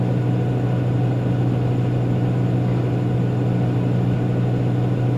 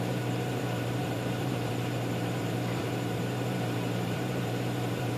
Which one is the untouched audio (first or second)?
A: first